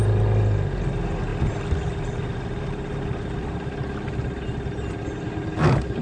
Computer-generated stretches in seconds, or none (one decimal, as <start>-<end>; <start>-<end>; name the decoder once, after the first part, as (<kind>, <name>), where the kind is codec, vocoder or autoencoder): none

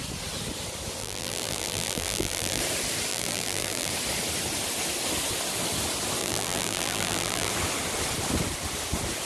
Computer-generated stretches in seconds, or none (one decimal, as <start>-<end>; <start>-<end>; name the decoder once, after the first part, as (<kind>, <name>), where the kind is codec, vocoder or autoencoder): 1.0-2.6 (vocoder, BigVGAN v2); 3.1-3.9; 6.2-7.5

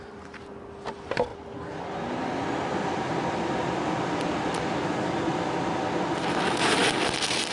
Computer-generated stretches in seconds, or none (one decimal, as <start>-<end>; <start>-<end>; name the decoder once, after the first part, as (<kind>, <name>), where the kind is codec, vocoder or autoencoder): none

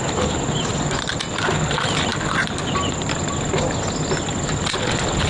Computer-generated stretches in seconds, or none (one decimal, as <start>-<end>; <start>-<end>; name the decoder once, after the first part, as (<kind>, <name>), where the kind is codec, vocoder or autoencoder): none

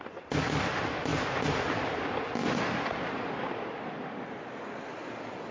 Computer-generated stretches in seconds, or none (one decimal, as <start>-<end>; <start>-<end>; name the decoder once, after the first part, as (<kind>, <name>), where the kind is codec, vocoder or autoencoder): none

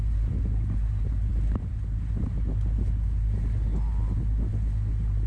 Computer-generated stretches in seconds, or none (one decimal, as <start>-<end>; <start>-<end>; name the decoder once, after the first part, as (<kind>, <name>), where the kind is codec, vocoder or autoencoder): none